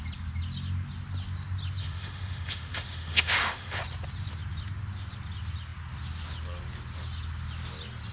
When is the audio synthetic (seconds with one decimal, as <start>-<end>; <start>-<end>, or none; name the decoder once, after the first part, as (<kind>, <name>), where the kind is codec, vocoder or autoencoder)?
1.8-3.8 (autoencoder, DAC-VAE)